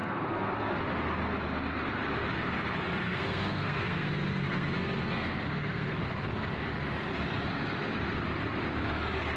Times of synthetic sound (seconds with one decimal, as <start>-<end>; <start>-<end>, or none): 0.0-0.8; 2.9-6.0